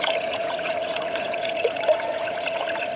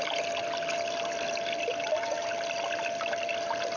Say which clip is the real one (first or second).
second